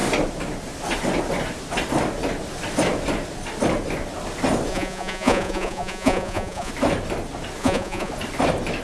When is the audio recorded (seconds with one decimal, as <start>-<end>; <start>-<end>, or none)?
0.0-4.7; 6.7-7.6; 8.1-8.8